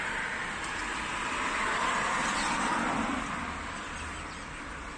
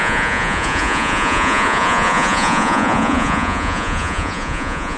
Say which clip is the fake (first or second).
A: second